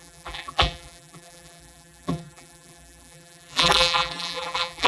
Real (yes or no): no